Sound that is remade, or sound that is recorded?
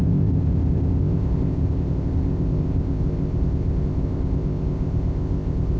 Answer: remade